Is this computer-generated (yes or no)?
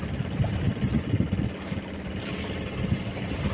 no